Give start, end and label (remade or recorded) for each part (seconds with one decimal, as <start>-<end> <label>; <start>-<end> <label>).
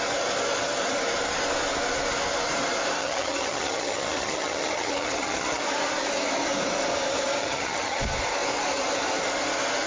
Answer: 0.0-3.0 recorded; 3.0-5.6 remade; 5.6-7.4 recorded; 7.4-8.0 remade; 8.0-9.9 recorded